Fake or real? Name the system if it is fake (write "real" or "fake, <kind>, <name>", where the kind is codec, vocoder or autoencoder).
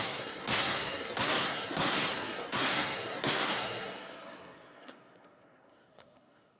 fake, codec, SNAC